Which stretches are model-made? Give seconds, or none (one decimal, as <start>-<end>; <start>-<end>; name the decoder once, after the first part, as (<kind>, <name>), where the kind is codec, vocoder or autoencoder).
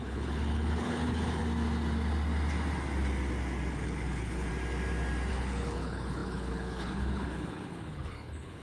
0.0-1.4 (codec, HILCodec); 3.7-4.5; 5.3-8.6